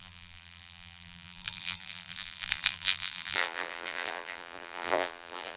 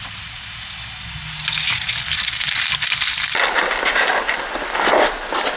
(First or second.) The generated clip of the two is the first